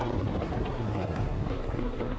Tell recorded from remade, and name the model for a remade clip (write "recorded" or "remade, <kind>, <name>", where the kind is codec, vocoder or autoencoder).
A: remade, codec, SNAC